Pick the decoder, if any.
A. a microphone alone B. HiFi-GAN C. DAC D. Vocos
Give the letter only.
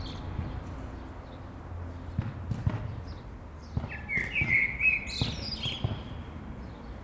A